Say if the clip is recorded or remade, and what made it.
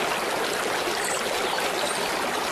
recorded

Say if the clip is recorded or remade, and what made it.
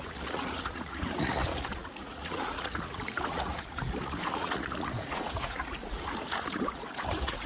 remade, vocoder, Vocos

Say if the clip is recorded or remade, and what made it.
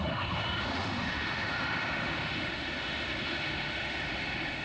remade, autoencoder, DAC-VAE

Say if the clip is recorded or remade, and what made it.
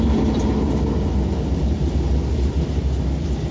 recorded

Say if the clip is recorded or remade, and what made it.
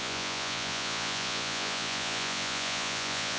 remade, vocoder, Vocos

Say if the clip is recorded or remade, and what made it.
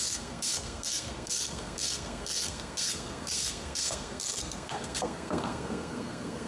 remade, codec, SNAC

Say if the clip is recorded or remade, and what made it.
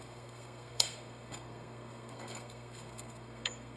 remade, codec, SNAC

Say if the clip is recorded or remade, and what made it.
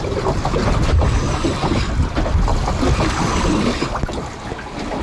recorded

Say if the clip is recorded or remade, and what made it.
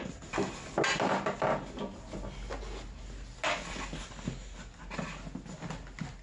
recorded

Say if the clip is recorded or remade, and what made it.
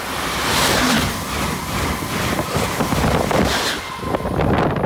recorded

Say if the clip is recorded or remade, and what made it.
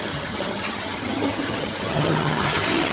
remade, vocoder, HiFi-GAN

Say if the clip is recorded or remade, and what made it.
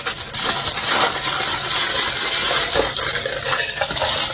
recorded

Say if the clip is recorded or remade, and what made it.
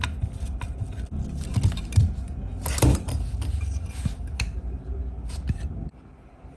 recorded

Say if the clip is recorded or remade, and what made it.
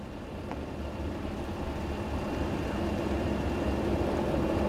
recorded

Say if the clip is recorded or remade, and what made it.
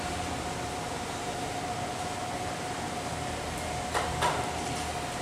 recorded